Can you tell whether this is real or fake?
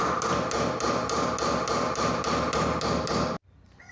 real